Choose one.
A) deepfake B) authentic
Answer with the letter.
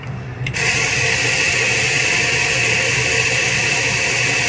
B